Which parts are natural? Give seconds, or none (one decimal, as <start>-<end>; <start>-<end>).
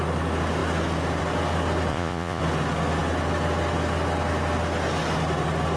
0.0-1.9; 2.4-5.8